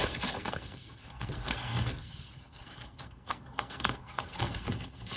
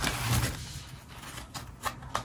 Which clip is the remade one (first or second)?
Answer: first